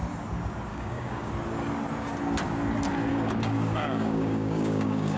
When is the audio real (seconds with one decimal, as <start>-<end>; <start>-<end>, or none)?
0.0-0.7; 1.3-3.1